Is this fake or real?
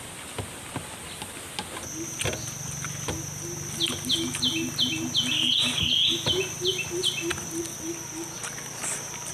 real